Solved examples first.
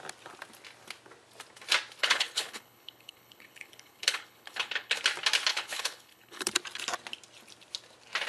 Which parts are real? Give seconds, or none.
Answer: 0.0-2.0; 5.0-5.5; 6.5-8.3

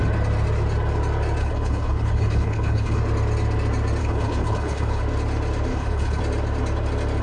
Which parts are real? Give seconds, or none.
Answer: 0.0-1.4; 3.0-4.0; 5.0-5.7; 6.2-7.2

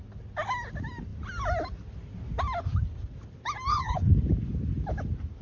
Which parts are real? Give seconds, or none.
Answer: 0.0-3.7; 4.2-5.4

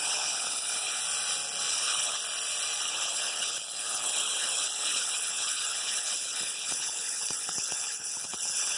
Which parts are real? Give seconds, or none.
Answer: 1.0-1.7; 2.2-2.8

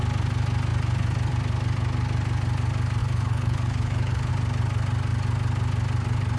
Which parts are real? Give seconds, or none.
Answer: 0.0-3.0; 4.3-6.4

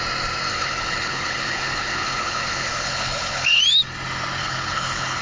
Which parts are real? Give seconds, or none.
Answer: 0.0-0.5; 3.6-4.4